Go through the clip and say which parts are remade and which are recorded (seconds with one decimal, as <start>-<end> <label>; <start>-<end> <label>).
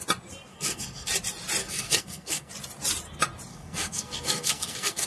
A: 0.0-0.5 recorded; 0.5-1.1 remade; 1.1-1.6 recorded; 1.6-2.5 remade; 2.5-3.5 recorded; 3.5-5.1 remade